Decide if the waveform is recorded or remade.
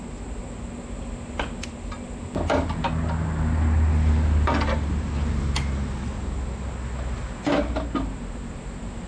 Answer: recorded